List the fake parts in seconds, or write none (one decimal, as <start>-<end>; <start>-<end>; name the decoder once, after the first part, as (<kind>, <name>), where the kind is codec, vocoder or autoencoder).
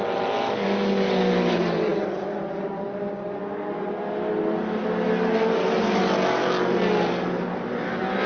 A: none